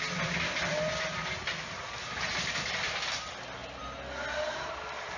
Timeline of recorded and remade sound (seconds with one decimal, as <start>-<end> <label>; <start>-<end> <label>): 0.0-5.2 recorded